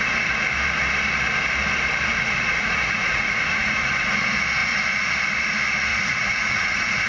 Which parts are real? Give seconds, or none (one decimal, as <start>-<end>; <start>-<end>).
0.0-2.1; 3.9-5.9